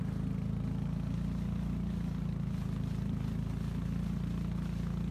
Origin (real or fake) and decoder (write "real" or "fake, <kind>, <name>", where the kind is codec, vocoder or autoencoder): real